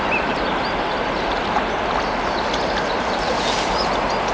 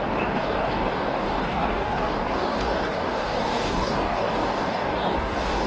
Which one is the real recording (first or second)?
first